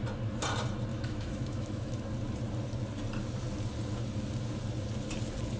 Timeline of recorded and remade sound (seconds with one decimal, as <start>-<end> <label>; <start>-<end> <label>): 0.0-0.9 recorded; 0.9-2.0 remade; 2.0-5.6 recorded